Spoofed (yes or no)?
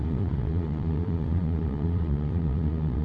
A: yes